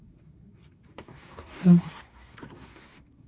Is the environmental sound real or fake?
fake